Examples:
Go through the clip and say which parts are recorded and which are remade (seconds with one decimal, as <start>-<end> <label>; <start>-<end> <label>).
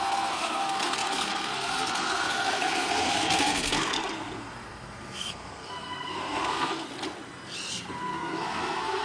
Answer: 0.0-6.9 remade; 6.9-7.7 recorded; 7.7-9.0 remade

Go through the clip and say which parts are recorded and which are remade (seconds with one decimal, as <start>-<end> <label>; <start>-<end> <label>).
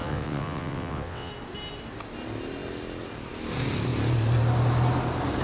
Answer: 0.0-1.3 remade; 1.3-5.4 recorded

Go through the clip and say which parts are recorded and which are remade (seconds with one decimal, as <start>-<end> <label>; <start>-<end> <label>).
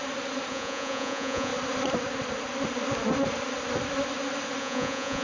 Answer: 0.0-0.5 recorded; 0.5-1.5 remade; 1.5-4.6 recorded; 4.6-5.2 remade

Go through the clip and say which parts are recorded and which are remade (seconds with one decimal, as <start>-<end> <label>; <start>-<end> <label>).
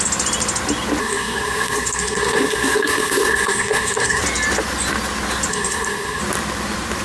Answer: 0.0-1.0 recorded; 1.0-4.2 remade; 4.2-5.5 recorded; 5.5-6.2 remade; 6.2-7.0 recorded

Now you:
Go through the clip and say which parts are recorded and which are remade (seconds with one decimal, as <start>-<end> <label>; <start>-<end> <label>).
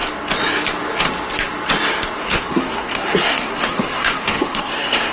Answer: 0.0-2.2 recorded; 2.2-5.1 remade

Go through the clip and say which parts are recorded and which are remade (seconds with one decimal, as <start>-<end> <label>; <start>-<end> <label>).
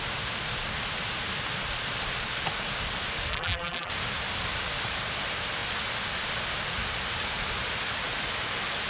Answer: 0.0-3.3 recorded; 3.3-3.9 remade; 3.9-8.9 recorded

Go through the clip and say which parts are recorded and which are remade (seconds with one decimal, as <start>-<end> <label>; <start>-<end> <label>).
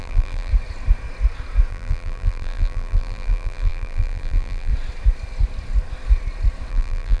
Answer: 0.0-0.5 remade; 0.5-1.7 recorded; 1.7-4.7 remade; 4.7-6.7 recorded; 6.7-7.2 remade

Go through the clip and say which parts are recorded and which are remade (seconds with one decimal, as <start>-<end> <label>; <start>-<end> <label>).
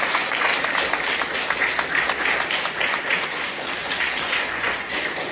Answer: 0.0-0.5 remade; 0.5-2.5 recorded; 2.5-5.3 remade